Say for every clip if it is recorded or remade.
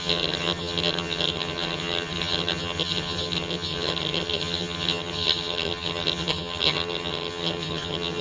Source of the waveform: remade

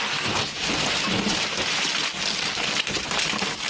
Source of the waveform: recorded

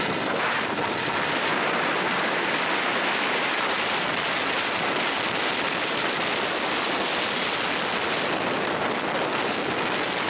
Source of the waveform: recorded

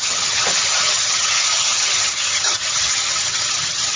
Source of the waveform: remade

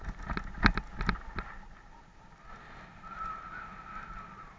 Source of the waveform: recorded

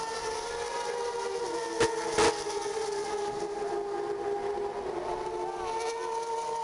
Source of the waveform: recorded